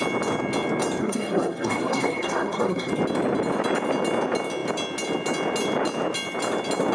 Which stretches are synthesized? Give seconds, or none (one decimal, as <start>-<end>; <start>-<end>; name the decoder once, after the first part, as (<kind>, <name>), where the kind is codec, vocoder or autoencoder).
1.0-2.9 (codec, SNAC)